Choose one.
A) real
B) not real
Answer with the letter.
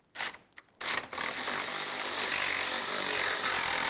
A